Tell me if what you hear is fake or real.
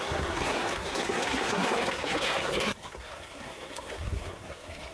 fake